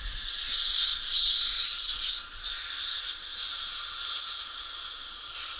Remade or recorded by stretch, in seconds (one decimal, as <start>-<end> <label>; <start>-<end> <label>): 0.0-5.6 recorded